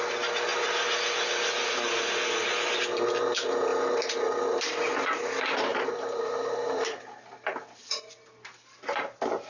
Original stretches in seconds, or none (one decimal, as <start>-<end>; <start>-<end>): 0.0-3.7; 4.3-5.7; 6.8-9.5